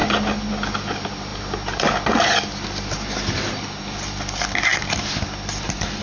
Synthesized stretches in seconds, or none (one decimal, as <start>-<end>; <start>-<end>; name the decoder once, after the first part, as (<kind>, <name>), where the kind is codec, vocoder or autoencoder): none